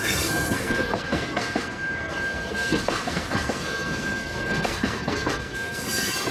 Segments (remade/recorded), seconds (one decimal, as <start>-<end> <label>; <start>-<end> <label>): 0.0-6.3 remade

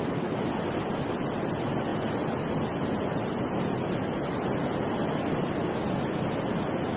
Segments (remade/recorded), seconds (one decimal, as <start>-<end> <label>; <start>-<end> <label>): 0.0-7.0 recorded

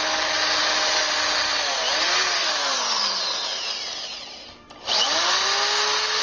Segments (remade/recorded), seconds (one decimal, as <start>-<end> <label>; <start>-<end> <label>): 0.0-6.2 recorded

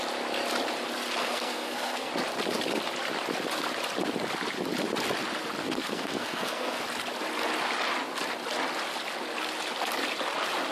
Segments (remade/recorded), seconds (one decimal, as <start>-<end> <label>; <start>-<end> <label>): 0.0-1.2 recorded; 1.2-2.1 remade; 2.1-5.6 recorded; 5.6-6.8 remade; 6.8-10.7 recorded

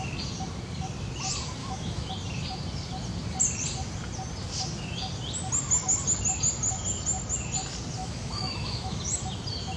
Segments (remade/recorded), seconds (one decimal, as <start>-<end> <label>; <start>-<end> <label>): 0.0-1.6 recorded; 1.6-2.1 remade; 2.1-8.0 recorded; 8.0-9.0 remade; 9.0-9.8 recorded

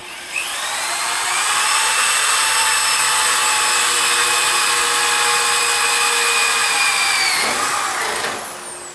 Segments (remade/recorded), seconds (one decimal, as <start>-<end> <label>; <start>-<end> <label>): 0.0-3.0 remade; 3.0-4.2 recorded; 4.2-4.7 remade; 4.7-6.6 recorded; 6.6-7.2 remade; 7.2-8.9 recorded

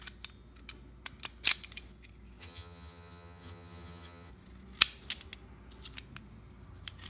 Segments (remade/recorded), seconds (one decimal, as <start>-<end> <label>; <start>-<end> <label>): 0.0-2.4 recorded; 2.4-4.3 remade; 4.3-7.1 recorded

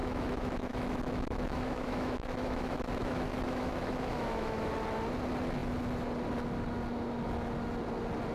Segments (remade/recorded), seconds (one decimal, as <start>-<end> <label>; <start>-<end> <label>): 0.0-4.7 remade; 4.7-8.3 recorded